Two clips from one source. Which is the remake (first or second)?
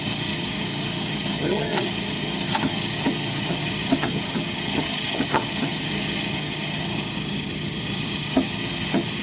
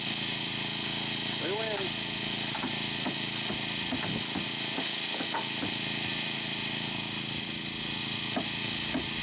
first